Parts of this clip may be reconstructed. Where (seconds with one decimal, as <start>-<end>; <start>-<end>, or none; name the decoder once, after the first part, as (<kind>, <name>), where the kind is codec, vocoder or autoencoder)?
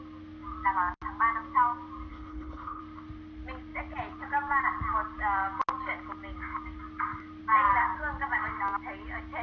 2.1-2.8 (codec, HILCodec)